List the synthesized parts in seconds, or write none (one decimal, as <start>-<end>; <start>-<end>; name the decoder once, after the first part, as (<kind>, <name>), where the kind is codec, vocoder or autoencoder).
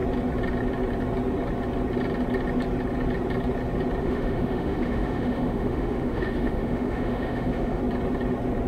4.0-7.8 (autoencoder, DAC-VAE)